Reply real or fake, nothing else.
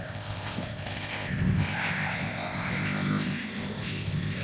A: fake